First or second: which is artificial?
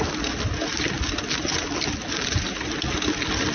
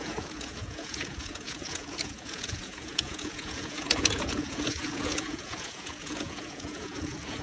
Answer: second